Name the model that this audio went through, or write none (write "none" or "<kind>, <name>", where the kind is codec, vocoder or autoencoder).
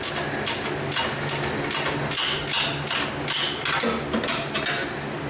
none